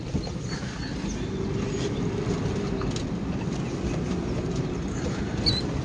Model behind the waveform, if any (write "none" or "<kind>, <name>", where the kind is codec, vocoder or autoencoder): none